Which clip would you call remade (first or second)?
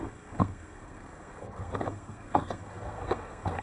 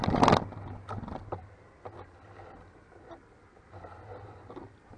first